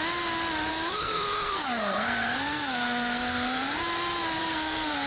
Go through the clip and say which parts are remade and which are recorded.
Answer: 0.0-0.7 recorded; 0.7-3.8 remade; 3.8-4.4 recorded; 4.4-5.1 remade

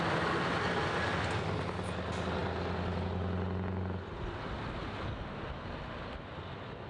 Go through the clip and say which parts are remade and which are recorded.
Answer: 0.0-6.9 recorded

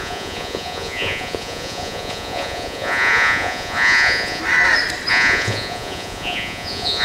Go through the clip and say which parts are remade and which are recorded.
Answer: 0.0-4.4 remade; 4.4-5.1 recorded; 5.1-7.0 remade

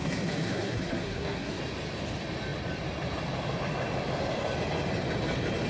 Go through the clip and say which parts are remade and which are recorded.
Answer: 0.0-1.6 remade; 1.6-5.7 recorded

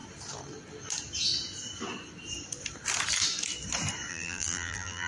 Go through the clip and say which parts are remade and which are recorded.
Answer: 0.0-4.1 recorded; 4.1-5.1 remade

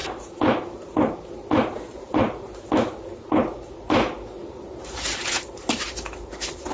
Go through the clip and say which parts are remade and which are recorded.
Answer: 0.0-4.4 recorded; 4.4-5.9 remade; 5.9-6.7 recorded